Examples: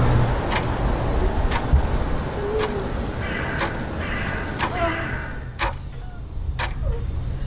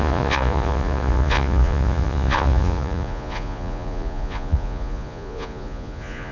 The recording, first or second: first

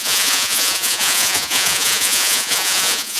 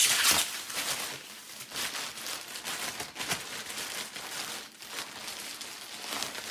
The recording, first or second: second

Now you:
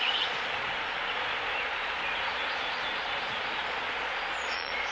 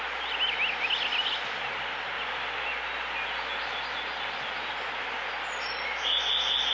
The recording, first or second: second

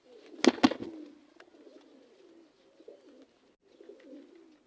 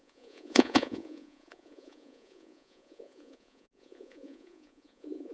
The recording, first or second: first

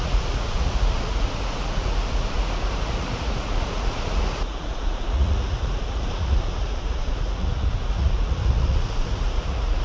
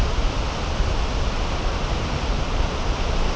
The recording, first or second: second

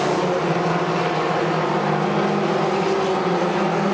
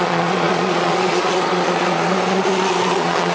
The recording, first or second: first